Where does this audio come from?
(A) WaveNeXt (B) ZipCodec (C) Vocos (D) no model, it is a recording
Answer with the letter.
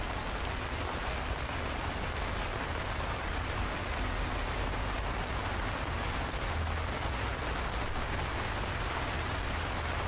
D